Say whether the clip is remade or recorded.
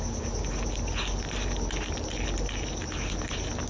recorded